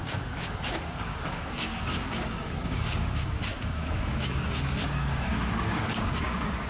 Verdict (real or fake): fake